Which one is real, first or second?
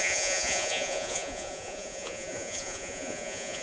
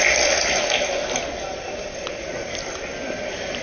second